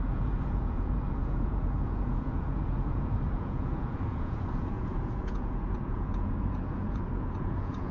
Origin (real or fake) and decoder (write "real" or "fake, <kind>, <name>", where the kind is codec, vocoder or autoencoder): fake, vocoder, Vocos